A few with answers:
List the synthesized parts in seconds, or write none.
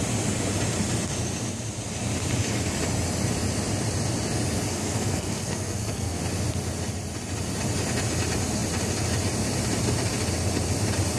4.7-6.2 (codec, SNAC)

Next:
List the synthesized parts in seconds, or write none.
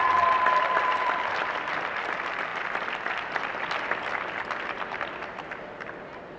none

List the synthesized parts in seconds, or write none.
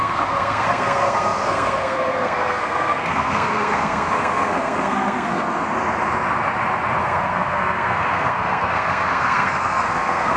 0.0-5.7 (codec, SNAC); 7.0-10.4